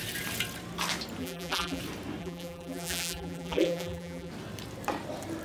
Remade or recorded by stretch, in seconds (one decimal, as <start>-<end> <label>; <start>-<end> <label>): 0.0-1.2 recorded; 1.2-1.8 remade; 1.8-2.2 recorded; 2.2-4.3 remade; 4.3-5.4 recorded